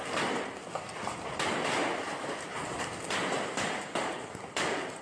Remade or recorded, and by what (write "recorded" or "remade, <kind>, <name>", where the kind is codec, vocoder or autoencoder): recorded